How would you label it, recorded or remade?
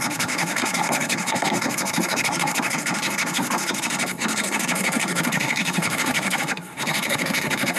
remade